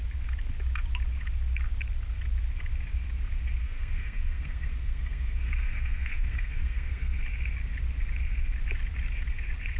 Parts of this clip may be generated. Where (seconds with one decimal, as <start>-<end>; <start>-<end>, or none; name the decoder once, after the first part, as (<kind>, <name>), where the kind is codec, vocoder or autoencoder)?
3.6-7.2 (codec, SNAC)